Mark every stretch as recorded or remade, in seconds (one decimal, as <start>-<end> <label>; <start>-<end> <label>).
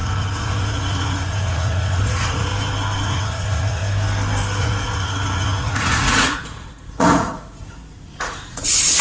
0.0-2.5 remade; 2.5-3.0 recorded; 3.0-3.8 remade; 3.8-4.6 recorded; 4.6-9.0 remade